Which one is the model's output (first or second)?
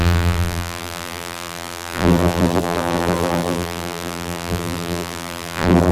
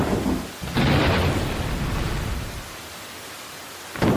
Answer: first